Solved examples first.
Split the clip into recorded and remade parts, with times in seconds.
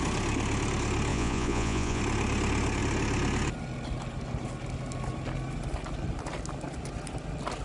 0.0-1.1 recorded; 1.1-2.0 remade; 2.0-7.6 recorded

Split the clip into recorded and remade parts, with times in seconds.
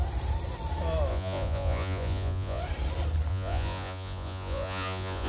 0.0-1.1 recorded; 1.1-2.6 remade; 2.6-3.3 recorded; 3.3-5.3 remade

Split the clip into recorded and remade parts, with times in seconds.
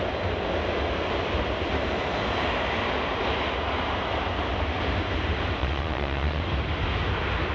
0.0-5.6 recorded; 5.6-6.4 remade; 6.4-7.5 recorded